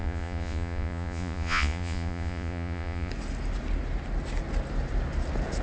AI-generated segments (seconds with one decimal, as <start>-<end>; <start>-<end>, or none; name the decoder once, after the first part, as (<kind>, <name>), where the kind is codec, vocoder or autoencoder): 0.0-3.1 (vocoder, Vocos)